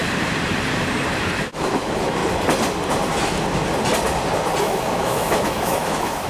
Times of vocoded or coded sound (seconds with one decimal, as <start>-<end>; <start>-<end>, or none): 1.4-2.2; 4.6-6.3